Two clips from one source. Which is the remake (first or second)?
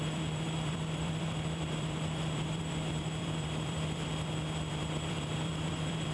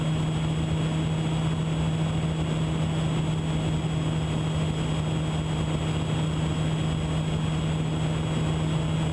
first